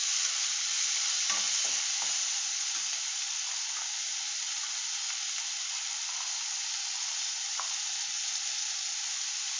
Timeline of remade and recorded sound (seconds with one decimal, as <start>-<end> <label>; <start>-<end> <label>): 0.0-1.0 remade; 1.0-9.6 recorded